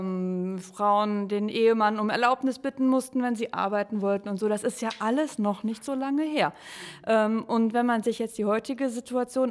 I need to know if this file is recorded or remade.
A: recorded